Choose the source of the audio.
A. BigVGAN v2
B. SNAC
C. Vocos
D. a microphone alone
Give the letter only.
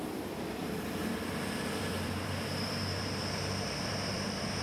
A